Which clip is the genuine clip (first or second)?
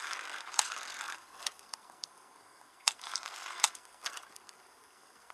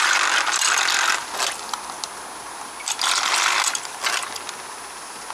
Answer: second